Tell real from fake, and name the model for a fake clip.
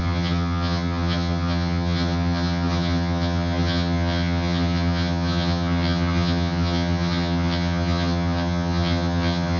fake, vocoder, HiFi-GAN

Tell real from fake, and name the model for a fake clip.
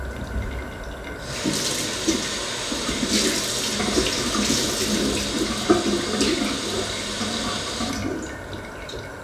real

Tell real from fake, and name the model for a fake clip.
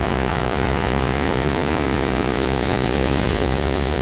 fake, vocoder, Vocos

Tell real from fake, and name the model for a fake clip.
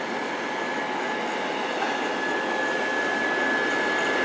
real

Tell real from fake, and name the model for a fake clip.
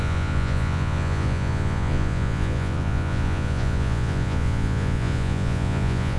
fake, vocoder, Vocos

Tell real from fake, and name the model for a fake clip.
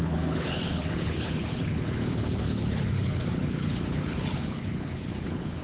fake, codec, HILCodec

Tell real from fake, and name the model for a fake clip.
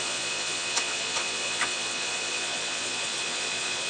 fake, vocoder, Vocos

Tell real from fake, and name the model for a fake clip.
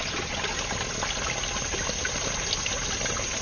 real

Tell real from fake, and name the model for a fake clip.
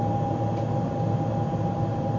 real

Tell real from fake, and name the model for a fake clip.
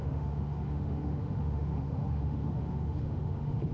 fake, autoencoder, DAC-VAE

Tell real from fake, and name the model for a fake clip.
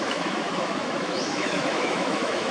fake, autoencoder, DAC-VAE